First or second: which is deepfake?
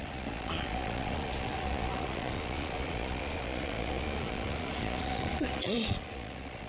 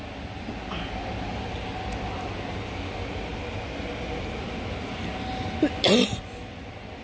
first